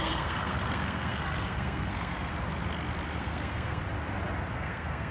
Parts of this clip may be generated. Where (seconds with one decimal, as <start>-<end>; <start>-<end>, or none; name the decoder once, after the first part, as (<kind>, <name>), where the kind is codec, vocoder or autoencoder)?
0.0-2.3 (codec, SNAC); 3.2-3.8; 4.5-5.1